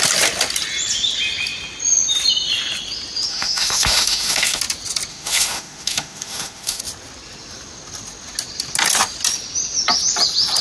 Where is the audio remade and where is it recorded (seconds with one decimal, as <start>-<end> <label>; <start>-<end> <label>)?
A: 0.0-3.3 recorded; 3.3-4.6 remade; 4.6-5.1 recorded; 5.1-6.8 remade; 6.8-10.6 recorded